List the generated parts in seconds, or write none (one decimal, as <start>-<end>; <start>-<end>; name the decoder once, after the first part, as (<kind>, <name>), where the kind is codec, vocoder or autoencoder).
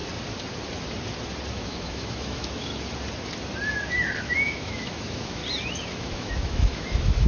1.5-2.7 (autoencoder, DAC-VAE); 4.2-5.4; 5.9-7.3